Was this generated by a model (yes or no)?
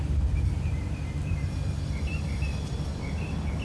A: yes